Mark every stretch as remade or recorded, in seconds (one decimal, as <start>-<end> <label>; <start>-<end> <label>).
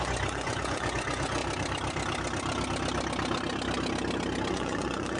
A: 0.0-1.4 remade; 1.4-4.5 recorded; 4.5-5.2 remade